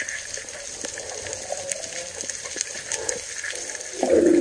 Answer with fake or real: real